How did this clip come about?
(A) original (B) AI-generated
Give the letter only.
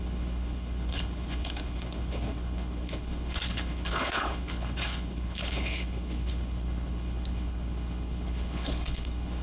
B